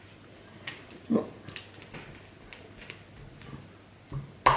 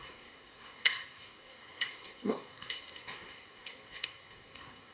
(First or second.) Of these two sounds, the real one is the first